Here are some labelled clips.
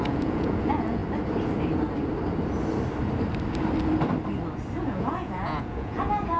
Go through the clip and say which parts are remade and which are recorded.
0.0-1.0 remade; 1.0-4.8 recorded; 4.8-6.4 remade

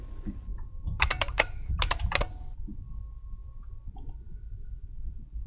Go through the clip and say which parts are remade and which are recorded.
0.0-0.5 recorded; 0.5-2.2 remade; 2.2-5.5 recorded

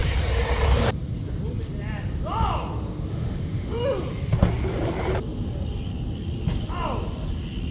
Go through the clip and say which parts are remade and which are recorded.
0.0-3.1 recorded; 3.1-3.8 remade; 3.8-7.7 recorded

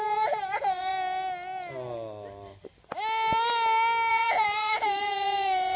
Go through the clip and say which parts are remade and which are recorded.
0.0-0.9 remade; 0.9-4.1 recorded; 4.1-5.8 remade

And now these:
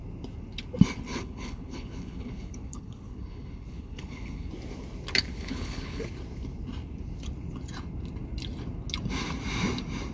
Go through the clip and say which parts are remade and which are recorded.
0.0-1.1 recorded; 1.1-4.5 remade; 4.5-5.3 recorded; 5.3-6.0 remade; 6.0-10.1 recorded

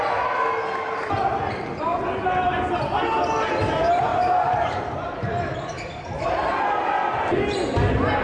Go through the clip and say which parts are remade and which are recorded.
0.0-8.2 recorded